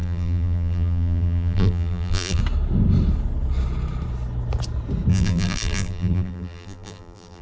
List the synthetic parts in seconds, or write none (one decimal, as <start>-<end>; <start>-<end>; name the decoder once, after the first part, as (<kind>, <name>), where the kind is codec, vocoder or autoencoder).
0.0-2.4 (vocoder, BigVGAN v2); 5.1-7.4